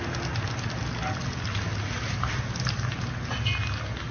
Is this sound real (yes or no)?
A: yes